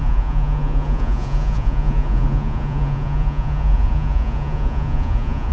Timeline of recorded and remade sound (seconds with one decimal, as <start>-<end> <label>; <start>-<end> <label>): 0.0-5.5 remade